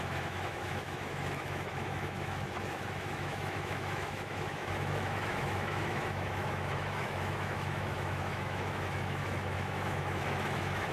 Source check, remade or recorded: remade